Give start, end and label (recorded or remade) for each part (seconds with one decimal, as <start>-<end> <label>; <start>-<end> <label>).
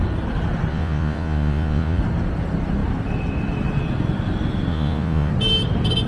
0.0-0.7 recorded; 0.7-2.0 remade; 2.0-4.7 recorded; 4.7-5.3 remade; 5.3-6.1 recorded